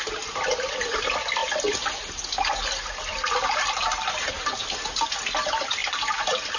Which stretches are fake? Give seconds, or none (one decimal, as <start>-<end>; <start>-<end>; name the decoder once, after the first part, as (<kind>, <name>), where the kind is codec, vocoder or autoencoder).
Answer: 1.4-4.7 (vocoder, BigVGAN v2); 5.8-6.6